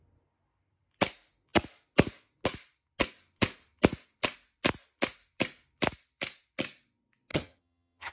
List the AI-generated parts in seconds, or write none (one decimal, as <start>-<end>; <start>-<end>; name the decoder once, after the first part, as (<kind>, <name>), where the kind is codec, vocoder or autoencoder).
7.3-8.1 (vocoder, HiFi-GAN)